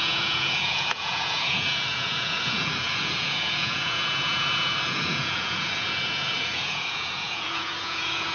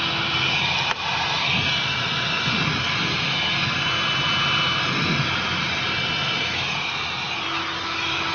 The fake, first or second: first